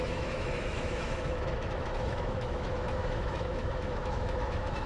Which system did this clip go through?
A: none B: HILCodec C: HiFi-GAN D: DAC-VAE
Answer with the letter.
D